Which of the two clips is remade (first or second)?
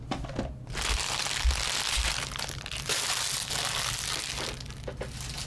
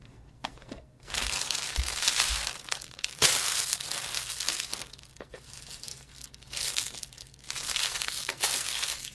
second